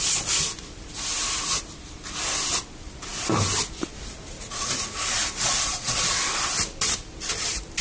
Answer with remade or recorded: recorded